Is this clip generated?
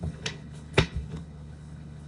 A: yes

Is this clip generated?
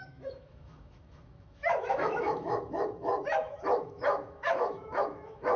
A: yes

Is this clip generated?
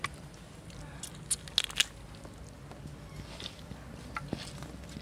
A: no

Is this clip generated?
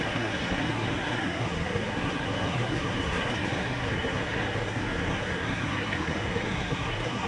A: yes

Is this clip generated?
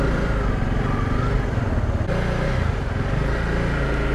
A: no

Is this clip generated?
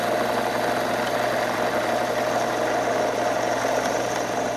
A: no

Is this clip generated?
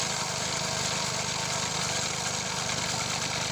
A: no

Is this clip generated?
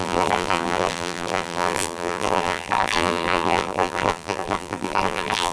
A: yes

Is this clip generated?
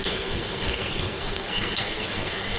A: yes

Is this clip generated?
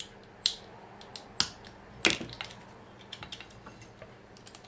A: no